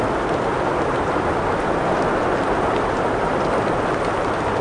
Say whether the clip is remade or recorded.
recorded